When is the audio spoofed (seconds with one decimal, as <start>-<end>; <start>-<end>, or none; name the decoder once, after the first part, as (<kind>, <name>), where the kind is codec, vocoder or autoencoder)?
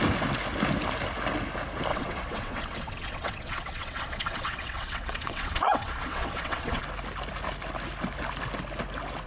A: 1.9-6.8 (vocoder, WaveNeXt)